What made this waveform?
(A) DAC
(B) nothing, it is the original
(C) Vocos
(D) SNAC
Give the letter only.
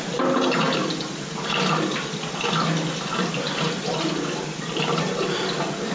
B